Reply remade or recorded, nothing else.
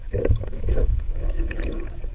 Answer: remade